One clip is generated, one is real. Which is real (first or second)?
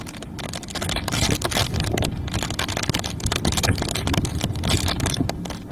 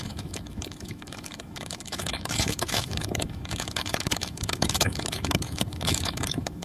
first